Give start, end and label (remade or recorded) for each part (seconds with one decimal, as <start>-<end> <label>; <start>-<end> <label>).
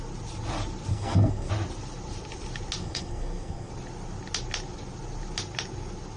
0.0-0.9 recorded; 0.9-1.5 remade; 1.5-2.8 recorded; 2.8-3.7 remade; 3.7-6.2 recorded